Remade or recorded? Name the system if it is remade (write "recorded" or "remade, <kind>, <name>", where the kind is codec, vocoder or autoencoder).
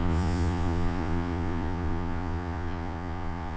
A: remade, vocoder, Vocos